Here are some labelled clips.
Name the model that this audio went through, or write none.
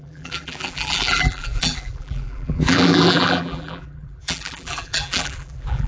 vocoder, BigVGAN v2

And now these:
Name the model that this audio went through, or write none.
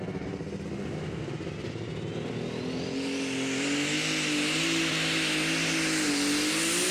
none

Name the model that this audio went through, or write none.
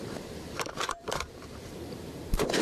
vocoder, BigVGAN v2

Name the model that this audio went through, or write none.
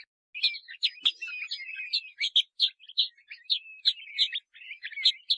none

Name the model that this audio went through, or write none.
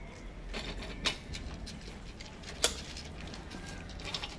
none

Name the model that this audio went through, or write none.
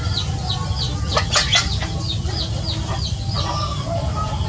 none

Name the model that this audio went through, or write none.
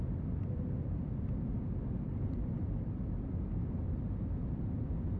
vocoder, BigVGAN v2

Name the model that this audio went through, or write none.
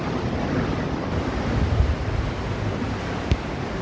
vocoder, BigVGAN v2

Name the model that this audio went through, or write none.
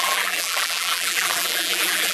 vocoder, BigVGAN v2